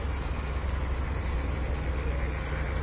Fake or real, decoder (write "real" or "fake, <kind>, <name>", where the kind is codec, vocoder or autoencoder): real